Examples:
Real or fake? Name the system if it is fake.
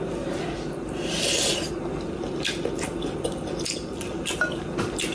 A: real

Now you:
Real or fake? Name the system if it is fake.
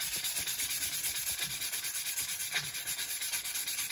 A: fake, vocoder, BigVGAN v2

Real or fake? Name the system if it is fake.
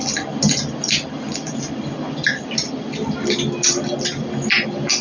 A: real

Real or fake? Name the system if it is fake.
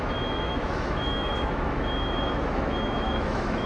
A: fake, autoencoder, DAC-VAE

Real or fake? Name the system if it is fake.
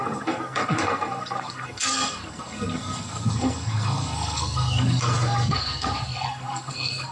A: fake, codec, SNAC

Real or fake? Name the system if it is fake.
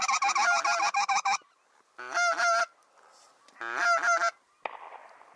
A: real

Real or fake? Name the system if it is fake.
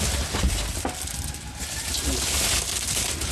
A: real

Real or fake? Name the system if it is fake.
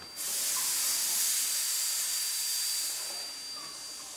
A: real